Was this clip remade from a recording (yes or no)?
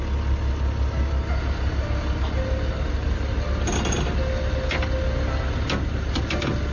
no